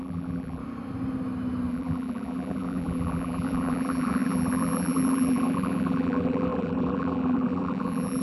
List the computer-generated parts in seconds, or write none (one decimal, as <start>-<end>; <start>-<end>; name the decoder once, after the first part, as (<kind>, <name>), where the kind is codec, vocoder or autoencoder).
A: 0.0-0.6 (vocoder, BigVGAN v2); 1.7-8.2

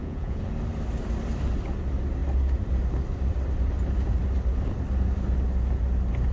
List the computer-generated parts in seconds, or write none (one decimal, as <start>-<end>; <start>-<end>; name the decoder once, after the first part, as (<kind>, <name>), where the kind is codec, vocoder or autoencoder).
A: 0.0-0.5 (vocoder, Vocos)

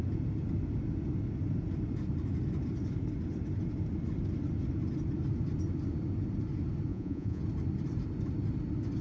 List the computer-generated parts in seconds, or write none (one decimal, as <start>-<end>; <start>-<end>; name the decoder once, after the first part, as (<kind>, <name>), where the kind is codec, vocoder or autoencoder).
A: 6.9-7.4 (vocoder, Vocos)

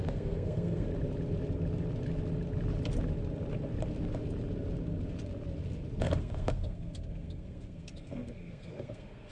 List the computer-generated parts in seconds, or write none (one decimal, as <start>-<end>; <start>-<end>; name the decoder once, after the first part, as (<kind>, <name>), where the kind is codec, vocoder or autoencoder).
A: 0.0-0.9 (codec, SNAC); 6.0-9.3